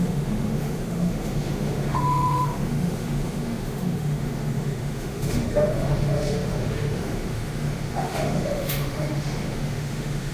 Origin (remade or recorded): remade